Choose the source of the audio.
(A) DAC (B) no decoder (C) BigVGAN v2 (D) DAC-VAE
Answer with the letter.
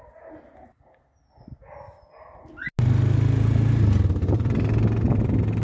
B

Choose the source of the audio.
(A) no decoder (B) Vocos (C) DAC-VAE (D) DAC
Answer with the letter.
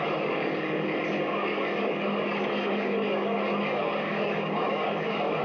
D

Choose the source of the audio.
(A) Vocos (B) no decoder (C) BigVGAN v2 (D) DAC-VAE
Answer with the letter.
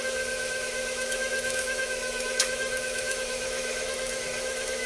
D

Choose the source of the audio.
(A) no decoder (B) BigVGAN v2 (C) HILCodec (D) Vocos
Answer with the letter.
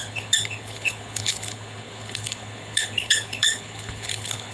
C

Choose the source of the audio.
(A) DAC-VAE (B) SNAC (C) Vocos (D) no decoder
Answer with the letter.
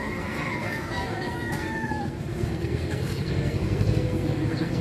B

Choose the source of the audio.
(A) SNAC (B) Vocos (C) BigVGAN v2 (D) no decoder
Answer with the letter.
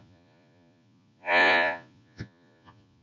B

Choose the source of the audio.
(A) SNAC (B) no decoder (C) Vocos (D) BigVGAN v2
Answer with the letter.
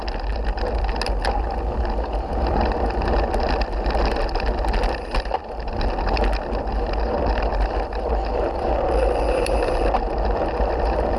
B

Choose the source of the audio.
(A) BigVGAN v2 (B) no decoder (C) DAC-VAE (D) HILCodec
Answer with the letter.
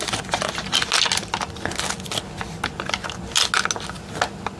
B